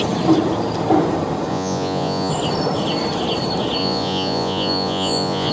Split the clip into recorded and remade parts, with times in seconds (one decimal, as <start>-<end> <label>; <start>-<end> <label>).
0.0-1.5 recorded; 1.5-2.3 remade; 2.3-3.8 recorded; 3.8-5.5 remade